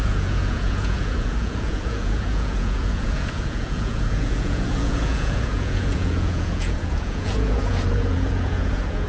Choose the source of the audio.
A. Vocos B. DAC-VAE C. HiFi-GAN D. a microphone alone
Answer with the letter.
A